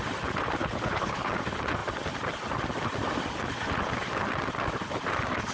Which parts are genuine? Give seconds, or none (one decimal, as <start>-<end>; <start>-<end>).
0.0-0.6; 1.3-5.5